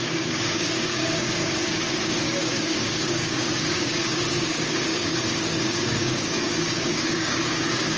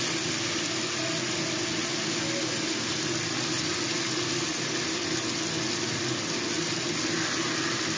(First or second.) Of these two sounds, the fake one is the first